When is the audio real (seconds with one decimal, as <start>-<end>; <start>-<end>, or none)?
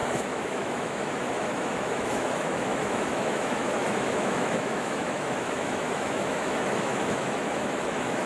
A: none